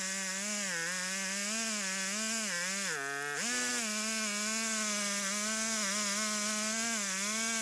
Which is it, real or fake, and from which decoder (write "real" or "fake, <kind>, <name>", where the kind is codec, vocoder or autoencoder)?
real